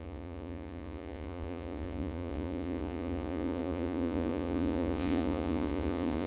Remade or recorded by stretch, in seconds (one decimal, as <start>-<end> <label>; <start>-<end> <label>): 0.0-6.3 remade